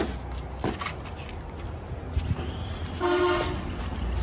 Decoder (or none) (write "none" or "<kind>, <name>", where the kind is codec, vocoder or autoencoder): none